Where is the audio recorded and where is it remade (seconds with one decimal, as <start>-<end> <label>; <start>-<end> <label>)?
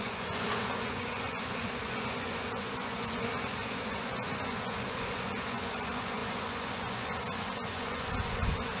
0.0-8.8 remade